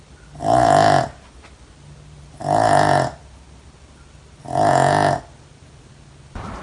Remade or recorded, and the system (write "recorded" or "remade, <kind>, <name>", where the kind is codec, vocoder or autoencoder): recorded